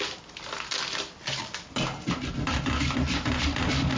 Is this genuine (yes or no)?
yes